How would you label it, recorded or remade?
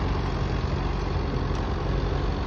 recorded